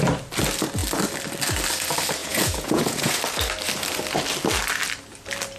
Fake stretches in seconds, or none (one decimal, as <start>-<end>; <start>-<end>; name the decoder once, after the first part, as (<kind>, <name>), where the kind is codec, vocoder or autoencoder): 2.2-3.2 (vocoder, Vocos)